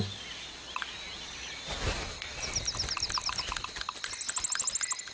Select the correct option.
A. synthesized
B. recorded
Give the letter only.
B